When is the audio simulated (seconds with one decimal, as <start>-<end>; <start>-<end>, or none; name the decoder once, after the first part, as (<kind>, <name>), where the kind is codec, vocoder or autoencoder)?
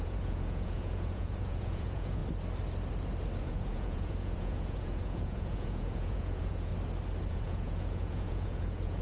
0.0-2.2 (vocoder, Vocos); 3.4-6.7; 7.3-9.0